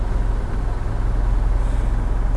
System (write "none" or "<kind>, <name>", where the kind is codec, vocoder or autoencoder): none